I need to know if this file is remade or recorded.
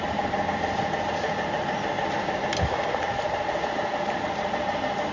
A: recorded